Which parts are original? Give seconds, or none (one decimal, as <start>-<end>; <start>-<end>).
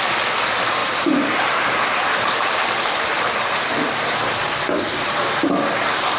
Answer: 0.0-0.8; 4.5-6.2